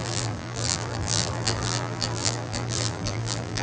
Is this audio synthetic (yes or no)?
yes